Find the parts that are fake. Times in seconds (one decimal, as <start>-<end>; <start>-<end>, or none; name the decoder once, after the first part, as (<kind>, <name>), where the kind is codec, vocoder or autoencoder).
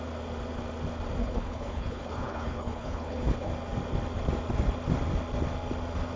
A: 1.2-3.5 (codec, HILCodec)